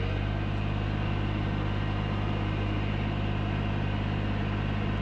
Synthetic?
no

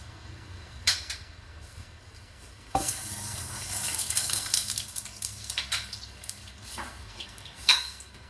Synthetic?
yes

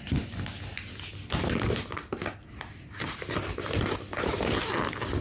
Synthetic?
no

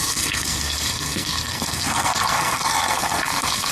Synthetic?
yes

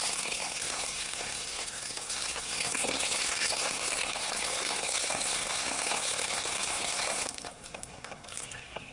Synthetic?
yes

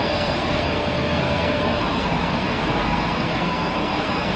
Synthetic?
yes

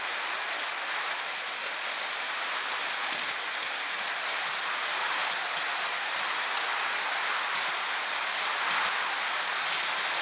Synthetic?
no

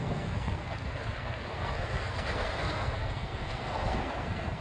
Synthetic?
yes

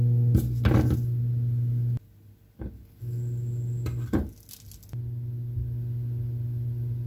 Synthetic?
no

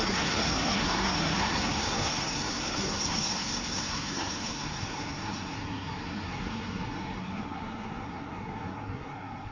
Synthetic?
yes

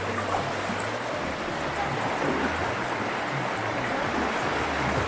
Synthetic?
no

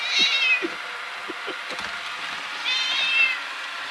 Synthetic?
no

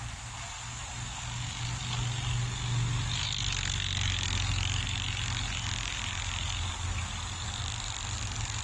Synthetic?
no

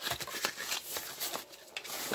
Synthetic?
no